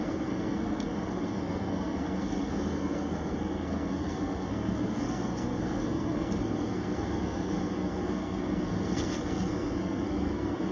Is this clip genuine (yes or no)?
no